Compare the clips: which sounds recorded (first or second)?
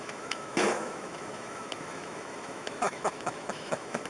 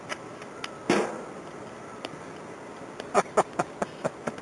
second